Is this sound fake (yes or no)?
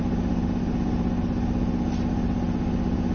no